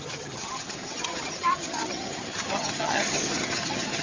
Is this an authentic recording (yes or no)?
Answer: no